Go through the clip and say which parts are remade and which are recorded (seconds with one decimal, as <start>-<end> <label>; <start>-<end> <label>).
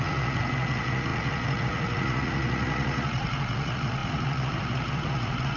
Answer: 0.0-5.6 remade